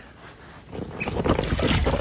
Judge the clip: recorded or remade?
recorded